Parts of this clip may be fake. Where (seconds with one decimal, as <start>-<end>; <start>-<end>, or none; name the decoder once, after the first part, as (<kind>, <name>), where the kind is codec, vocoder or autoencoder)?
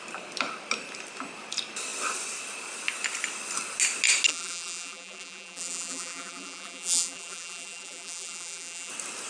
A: 4.3-8.9 (vocoder, BigVGAN v2)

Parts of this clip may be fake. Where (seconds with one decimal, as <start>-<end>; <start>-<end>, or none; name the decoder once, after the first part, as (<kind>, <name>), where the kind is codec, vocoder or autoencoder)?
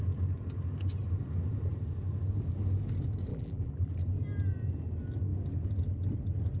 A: 3.3-3.9 (vocoder, BigVGAN v2)